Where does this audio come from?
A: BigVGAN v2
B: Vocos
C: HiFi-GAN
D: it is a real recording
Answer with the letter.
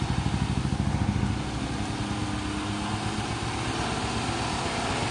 D